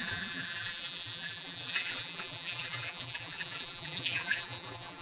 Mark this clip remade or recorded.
remade